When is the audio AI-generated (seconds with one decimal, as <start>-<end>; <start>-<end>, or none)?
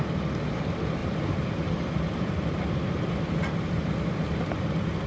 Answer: none